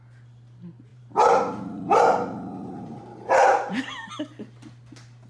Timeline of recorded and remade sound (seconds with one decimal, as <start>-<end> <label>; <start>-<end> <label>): 0.0-0.9 recorded; 0.9-4.1 remade; 4.1-5.3 recorded